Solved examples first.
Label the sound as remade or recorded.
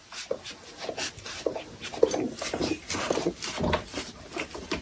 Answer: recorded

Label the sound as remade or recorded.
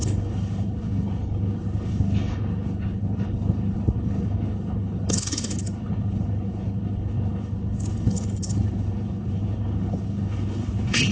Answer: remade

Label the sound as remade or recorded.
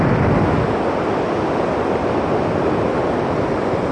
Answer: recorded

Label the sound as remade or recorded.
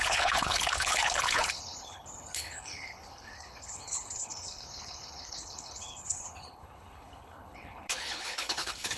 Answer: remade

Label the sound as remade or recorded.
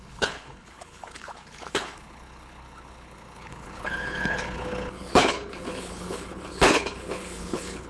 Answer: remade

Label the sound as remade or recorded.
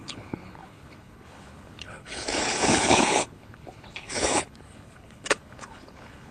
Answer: remade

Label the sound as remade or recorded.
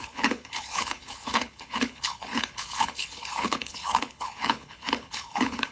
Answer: remade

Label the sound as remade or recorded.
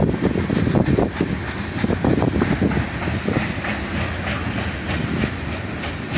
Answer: recorded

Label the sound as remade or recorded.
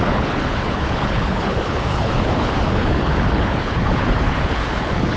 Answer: remade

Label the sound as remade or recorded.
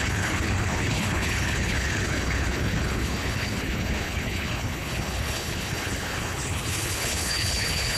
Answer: remade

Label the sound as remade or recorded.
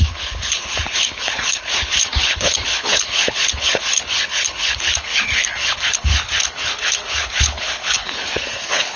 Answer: remade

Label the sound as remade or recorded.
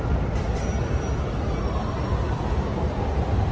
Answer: recorded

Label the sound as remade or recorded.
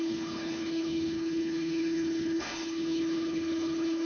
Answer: remade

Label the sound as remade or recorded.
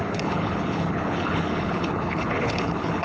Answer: remade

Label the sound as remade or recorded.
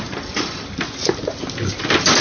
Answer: recorded